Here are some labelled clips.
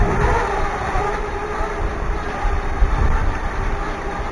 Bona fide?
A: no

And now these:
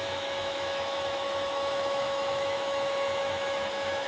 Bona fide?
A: no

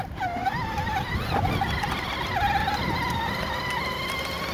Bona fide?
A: yes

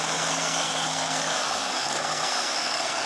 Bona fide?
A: no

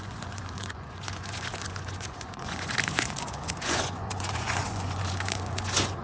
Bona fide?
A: no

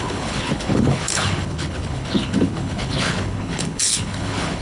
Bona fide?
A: no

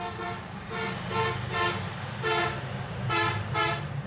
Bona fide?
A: yes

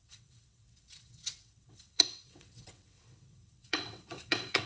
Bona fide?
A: no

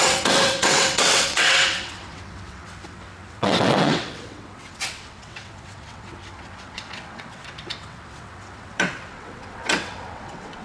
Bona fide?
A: no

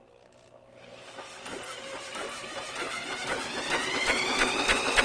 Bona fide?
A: yes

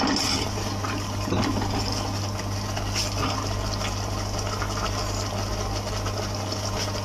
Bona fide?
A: yes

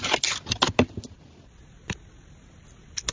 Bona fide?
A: yes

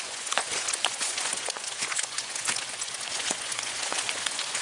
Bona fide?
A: no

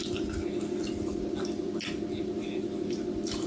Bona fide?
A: yes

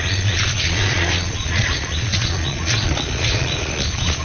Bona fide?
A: no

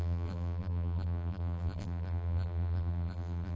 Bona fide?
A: no